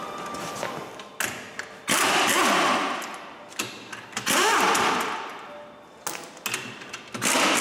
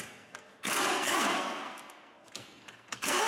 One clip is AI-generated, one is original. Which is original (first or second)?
first